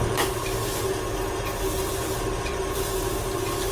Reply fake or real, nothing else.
real